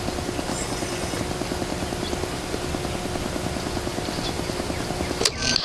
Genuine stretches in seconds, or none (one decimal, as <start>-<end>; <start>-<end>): 0.0-0.5; 1.2-5.6